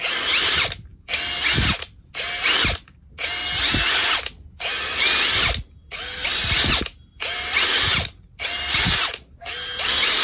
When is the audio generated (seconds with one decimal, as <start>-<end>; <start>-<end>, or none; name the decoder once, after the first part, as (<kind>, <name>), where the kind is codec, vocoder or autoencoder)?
none